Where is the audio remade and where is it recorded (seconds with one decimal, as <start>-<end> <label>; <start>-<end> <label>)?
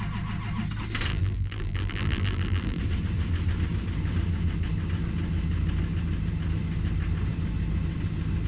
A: 0.0-1.1 recorded; 1.1-2.8 remade; 2.8-8.5 recorded